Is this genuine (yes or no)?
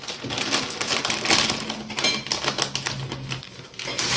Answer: yes